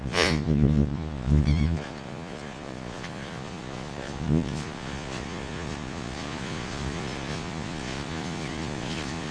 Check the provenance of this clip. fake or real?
fake